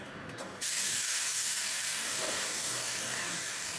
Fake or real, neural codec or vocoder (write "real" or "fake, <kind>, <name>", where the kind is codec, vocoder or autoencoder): fake, codec, DAC